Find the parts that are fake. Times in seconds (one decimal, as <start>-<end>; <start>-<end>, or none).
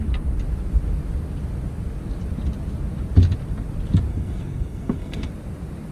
4.1-5.3